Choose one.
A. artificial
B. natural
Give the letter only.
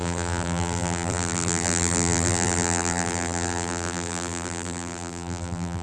A